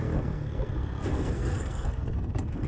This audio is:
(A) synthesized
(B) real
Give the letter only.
A